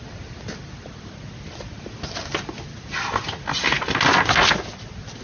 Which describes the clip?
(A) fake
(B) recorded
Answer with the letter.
B